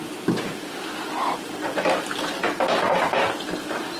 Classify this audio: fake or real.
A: real